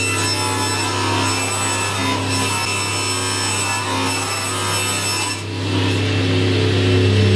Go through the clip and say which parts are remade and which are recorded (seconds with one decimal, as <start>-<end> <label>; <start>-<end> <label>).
0.0-7.4 recorded